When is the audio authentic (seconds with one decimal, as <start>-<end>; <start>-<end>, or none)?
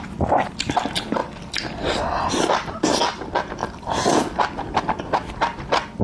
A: 0.0-6.0